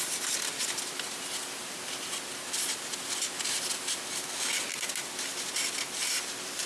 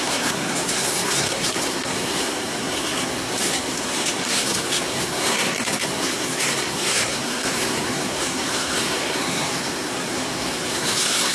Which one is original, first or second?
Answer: first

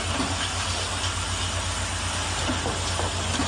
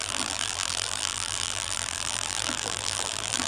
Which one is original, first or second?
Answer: first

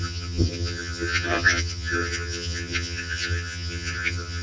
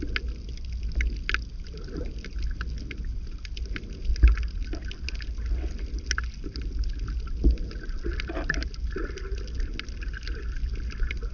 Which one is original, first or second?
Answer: second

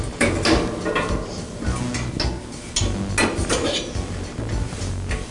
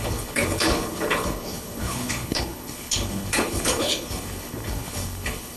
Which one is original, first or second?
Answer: first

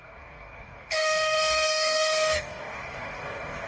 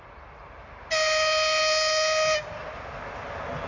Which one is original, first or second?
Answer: second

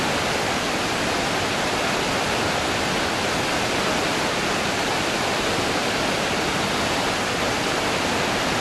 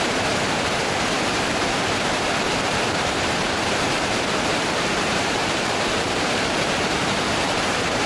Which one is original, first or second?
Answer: first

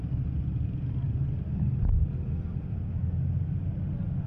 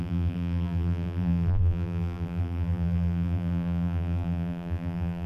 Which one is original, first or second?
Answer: first